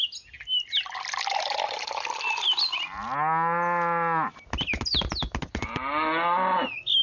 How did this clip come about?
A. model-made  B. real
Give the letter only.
B